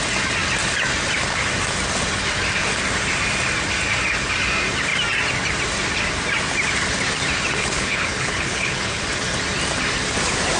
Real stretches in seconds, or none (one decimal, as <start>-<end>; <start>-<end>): 0.0-7.6; 9.0-10.6